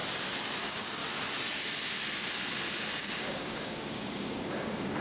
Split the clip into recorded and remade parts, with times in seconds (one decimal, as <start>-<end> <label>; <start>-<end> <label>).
0.0-0.6 recorded; 0.6-1.0 remade; 1.0-3.0 recorded; 3.0-5.0 remade